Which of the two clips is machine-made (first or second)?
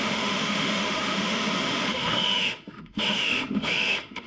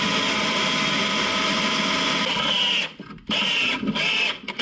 first